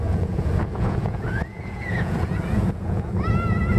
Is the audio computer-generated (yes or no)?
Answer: yes